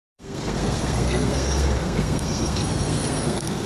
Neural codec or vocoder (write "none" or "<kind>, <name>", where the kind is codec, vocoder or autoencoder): codec, SNAC